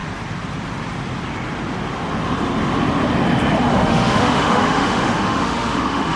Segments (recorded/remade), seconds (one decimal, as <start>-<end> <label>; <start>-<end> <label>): 0.0-3.7 recorded; 3.7-6.2 remade